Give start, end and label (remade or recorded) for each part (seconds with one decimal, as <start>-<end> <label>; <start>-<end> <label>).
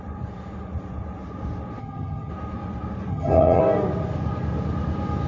0.0-1.8 recorded; 1.8-2.3 remade; 2.3-3.1 recorded; 3.1-3.6 remade; 3.6-5.3 recorded